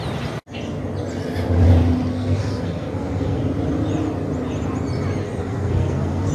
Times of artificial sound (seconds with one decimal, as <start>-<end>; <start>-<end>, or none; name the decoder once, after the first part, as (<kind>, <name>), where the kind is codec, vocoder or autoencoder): 2.1-3.4 (codec, SNAC); 5.4-6.3

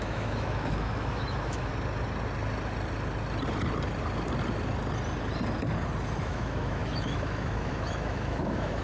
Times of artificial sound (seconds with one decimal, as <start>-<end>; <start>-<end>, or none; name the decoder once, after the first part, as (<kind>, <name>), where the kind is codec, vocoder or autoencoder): 0.0-1.7 (autoencoder, DAC-VAE); 6.2-8.8

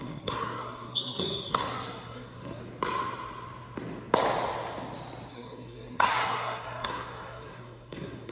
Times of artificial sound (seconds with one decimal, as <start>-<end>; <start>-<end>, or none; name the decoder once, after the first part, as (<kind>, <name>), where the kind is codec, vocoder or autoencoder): 0.0-2.6 (codec, SNAC); 5.3-8.3

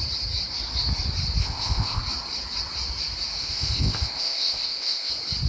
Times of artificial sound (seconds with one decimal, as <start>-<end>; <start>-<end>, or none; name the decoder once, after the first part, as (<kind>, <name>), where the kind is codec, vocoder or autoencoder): 1.4-2.0 (codec, ZipCodec); 3.4-5.1

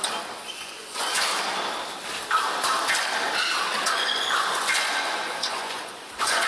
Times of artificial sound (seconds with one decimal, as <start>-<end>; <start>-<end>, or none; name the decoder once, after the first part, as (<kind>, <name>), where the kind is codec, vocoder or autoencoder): 0.6-1.3 (vocoder, Vocos); 3.9-6.5

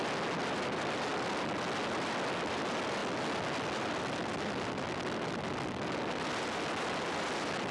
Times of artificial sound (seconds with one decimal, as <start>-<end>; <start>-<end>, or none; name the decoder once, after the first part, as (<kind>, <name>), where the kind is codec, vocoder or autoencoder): none

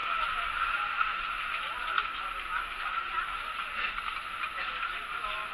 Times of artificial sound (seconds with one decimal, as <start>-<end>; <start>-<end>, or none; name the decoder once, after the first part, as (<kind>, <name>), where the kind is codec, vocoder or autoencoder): none